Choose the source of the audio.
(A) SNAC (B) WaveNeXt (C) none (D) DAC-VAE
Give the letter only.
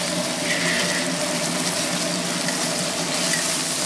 C